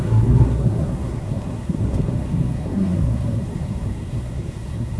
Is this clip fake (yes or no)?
yes